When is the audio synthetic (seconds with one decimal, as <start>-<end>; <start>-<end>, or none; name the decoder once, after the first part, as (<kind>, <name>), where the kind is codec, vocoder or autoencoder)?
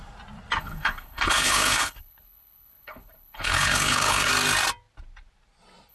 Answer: 0.6-4.3 (codec, HILCodec)